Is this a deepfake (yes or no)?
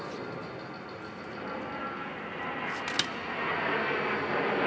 no